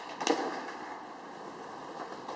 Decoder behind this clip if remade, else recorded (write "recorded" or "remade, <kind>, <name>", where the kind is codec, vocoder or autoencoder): recorded